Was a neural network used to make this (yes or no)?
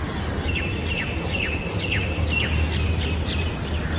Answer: no